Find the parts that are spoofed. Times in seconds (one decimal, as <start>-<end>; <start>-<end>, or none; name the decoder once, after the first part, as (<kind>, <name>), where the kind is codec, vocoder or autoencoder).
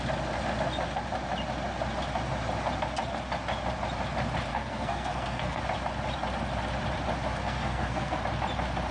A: 4.5-5.6 (codec, SNAC); 7.4-8.2